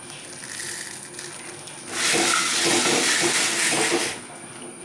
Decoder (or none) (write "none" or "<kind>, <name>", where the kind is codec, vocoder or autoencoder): none